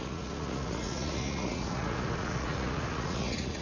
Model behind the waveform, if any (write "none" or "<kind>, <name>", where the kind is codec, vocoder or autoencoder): vocoder, Vocos